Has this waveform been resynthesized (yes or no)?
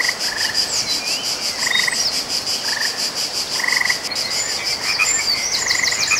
no